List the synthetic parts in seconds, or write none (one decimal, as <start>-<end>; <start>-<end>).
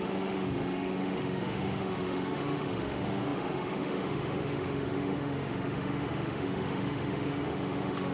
0.0-8.1